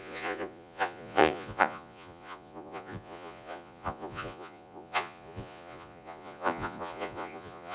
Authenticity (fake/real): fake